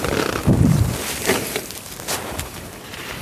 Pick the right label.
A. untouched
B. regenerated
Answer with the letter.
B